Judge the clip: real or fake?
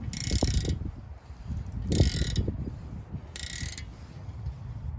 real